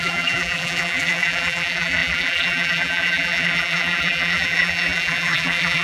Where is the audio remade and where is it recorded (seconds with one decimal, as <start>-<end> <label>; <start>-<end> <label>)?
0.0-5.8 remade